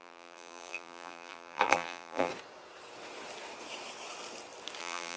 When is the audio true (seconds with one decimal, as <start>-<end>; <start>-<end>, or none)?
2.3-4.8